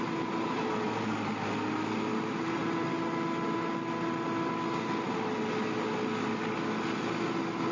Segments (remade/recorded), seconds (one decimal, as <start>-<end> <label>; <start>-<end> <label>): 0.0-7.7 recorded